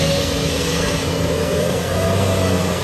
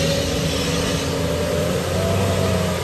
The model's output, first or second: first